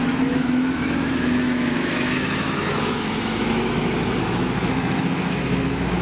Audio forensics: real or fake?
fake